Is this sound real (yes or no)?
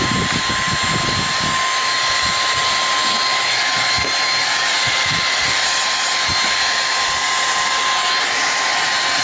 yes